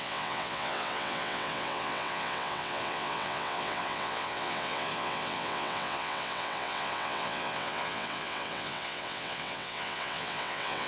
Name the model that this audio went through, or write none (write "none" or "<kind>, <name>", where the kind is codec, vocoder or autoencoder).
vocoder, WaveNeXt